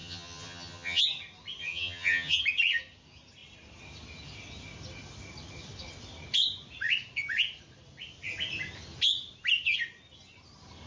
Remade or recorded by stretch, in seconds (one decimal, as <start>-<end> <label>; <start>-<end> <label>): 0.0-1.0 remade; 1.0-1.6 recorded; 1.6-2.4 remade; 2.4-10.9 recorded